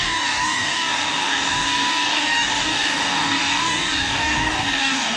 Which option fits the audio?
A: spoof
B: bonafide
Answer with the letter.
A